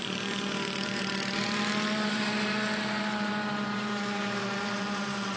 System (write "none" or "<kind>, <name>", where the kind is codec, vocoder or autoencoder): vocoder, BigVGAN v2